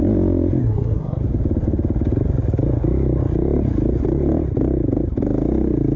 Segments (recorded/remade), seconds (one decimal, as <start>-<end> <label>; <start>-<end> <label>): 0.0-0.6 recorded; 0.6-1.2 remade; 1.2-6.0 recorded